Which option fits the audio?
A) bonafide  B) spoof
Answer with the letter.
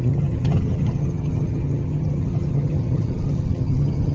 B